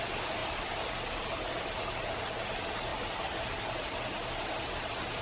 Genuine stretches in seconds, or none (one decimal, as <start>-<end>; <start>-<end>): 0.0-5.2